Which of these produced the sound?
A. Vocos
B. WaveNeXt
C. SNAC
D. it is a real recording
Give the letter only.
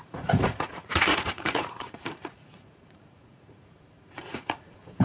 A